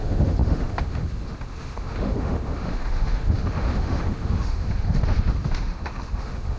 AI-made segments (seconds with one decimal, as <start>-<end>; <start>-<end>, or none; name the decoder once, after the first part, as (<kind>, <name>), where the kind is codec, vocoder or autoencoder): 0.0-6.6 (autoencoder, DAC-VAE)